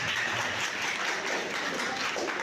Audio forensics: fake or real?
real